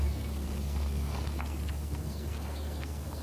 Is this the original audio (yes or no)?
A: no